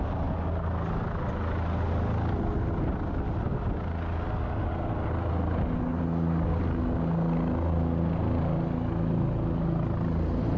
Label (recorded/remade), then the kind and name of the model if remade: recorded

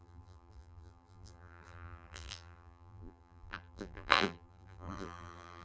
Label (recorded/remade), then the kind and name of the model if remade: remade, vocoder, BigVGAN v2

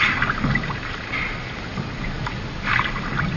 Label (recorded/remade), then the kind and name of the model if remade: recorded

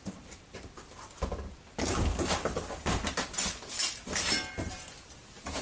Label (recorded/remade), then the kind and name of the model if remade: recorded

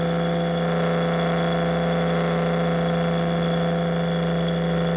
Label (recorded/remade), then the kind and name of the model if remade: recorded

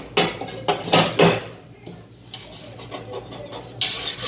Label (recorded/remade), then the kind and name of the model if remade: recorded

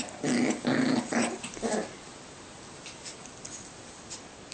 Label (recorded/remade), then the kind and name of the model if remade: recorded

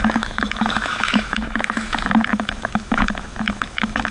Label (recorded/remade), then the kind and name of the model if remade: remade, autoencoder, DAC-VAE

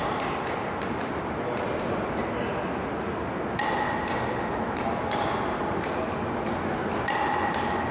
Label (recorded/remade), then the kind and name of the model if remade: recorded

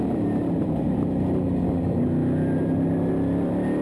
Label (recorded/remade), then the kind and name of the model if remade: recorded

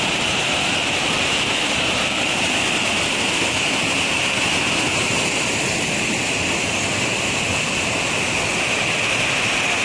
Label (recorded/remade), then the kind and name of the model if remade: recorded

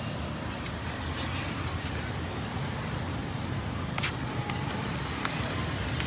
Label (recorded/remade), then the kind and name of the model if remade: recorded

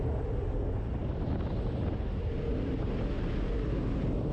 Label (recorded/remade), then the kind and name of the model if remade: recorded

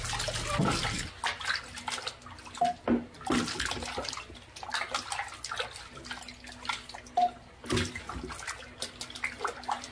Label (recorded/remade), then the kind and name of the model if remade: recorded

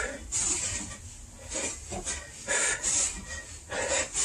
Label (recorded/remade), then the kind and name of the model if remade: remade, vocoder, BigVGAN v2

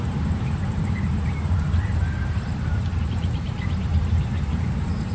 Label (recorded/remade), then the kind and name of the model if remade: remade, vocoder, BigVGAN v2